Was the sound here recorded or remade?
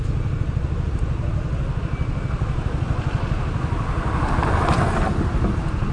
recorded